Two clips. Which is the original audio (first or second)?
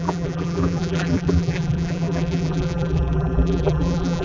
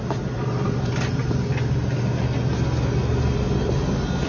second